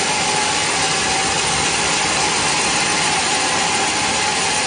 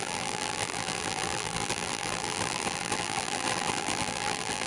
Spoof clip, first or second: second